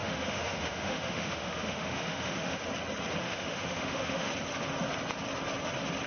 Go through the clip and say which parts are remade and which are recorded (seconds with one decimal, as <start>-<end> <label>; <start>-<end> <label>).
0.0-2.7 remade; 2.7-3.2 recorded; 3.2-4.3 remade; 4.3-6.1 recorded